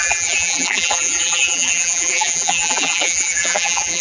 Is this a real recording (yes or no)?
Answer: no